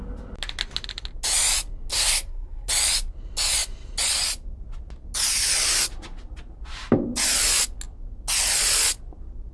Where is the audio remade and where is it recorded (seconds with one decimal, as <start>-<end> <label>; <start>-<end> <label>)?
0.0-1.9 recorded; 1.9-2.7 remade; 2.7-9.5 recorded